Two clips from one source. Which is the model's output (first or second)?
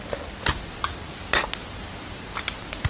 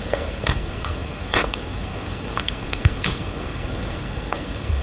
second